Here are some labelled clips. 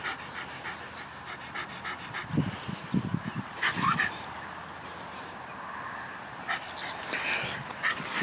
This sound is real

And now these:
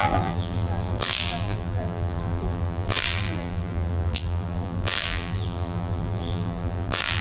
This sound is fake